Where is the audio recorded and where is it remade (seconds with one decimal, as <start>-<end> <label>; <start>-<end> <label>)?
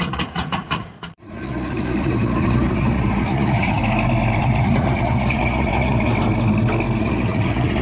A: 0.0-3.8 remade; 3.8-4.4 recorded; 4.4-6.1 remade; 6.1-7.0 recorded; 7.0-7.8 remade